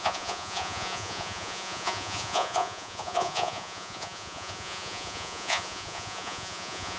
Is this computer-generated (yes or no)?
yes